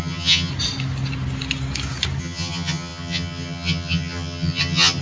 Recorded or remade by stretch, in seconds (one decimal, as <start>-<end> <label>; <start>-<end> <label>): 0.0-0.5 remade; 0.5-2.2 recorded; 2.2-5.0 remade